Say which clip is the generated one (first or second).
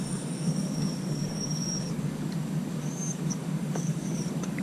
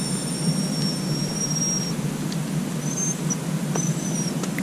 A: first